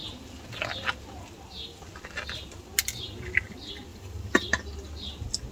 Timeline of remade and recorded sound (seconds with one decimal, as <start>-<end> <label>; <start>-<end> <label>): 0.0-3.9 recorded; 3.9-4.5 remade; 4.5-5.5 recorded

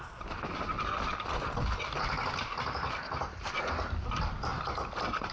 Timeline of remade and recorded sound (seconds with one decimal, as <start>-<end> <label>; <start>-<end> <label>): 0.0-5.3 recorded

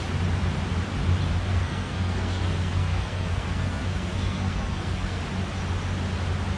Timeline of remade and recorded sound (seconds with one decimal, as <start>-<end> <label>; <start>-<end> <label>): 0.0-1.5 recorded; 1.5-5.2 remade; 5.2-6.6 recorded